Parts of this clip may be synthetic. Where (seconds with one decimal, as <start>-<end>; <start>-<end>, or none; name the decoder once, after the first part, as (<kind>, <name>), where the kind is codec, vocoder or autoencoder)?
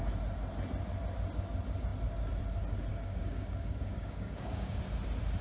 2.9-4.8 (codec, DAC)